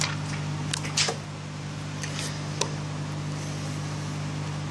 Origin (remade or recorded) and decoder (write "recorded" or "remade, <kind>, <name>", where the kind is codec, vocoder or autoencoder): recorded